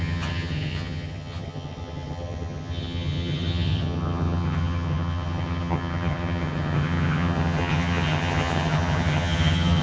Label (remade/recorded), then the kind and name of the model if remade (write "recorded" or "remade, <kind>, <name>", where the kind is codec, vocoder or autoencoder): remade, vocoder, HiFi-GAN